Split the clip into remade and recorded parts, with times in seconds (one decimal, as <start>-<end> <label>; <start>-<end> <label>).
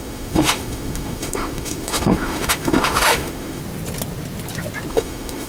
0.0-3.6 remade; 3.6-4.9 recorded; 4.9-5.5 remade